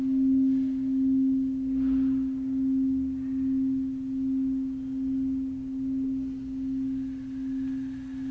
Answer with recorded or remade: recorded